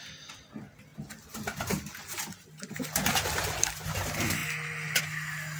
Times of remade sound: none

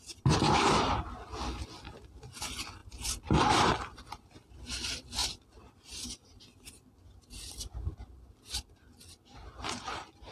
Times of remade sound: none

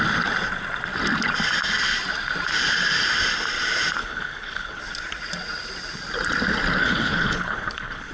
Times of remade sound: 4.0-4.8 (codec, HILCodec); 6.8-8.1

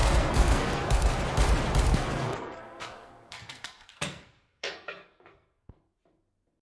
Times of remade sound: 0.0-1.2 (codec, SNAC); 1.9-5.9

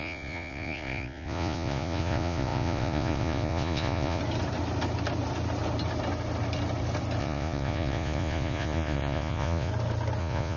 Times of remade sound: 0.0-4.2 (vocoder, Vocos); 7.2-9.7; 10.2-10.6